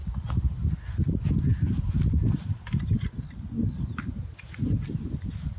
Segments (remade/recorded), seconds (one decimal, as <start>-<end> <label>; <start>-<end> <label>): 0.0-5.6 recorded